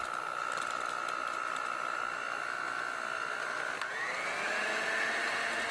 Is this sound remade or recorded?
recorded